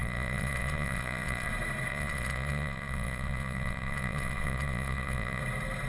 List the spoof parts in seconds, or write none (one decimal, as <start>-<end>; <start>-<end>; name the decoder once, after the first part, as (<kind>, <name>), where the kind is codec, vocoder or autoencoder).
0.0-1.5 (vocoder, Vocos); 1.9-5.4